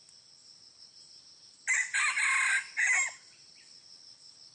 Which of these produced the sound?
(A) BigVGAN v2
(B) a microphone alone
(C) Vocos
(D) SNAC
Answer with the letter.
B